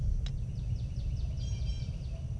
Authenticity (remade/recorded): recorded